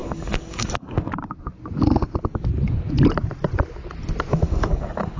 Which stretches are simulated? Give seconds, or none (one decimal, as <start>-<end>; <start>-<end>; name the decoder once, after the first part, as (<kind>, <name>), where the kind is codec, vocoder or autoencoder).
0.0-1.1 (codec, DAC); 4.3-5.2